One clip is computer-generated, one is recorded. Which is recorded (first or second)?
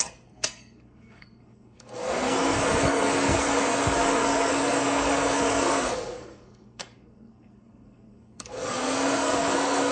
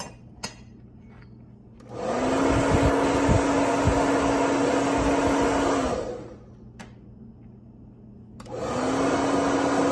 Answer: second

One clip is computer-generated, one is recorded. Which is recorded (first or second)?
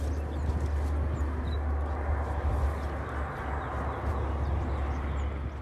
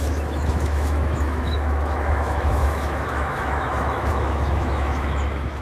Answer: first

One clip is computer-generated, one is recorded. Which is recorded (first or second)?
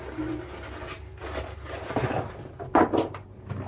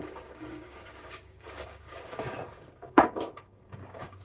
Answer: first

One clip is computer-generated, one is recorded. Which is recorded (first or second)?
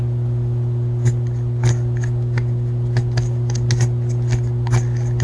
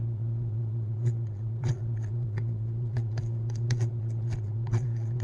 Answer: first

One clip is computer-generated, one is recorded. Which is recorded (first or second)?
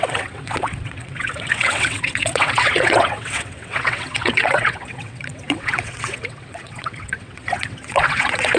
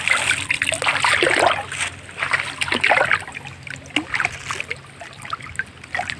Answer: second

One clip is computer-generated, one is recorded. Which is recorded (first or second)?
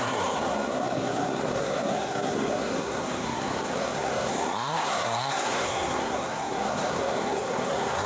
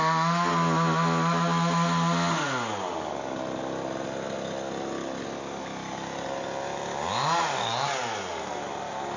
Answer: second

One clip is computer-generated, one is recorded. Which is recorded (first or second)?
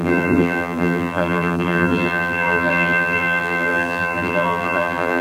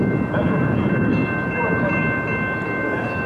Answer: second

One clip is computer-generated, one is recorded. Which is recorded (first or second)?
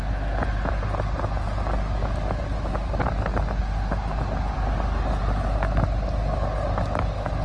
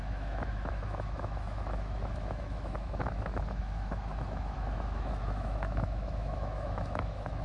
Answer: first